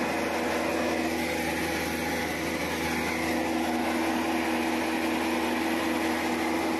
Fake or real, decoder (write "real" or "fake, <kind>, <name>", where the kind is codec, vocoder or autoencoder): real